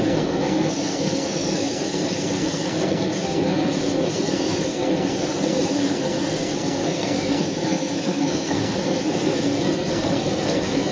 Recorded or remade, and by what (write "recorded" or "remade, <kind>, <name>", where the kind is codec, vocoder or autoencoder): remade, codec, SNAC